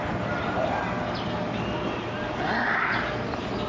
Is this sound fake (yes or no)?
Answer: no